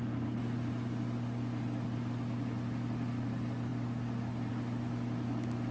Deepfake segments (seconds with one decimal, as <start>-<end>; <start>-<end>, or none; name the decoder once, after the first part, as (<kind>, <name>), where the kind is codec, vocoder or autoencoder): none